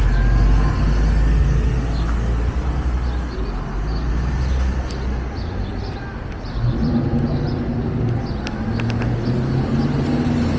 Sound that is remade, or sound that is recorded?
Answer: recorded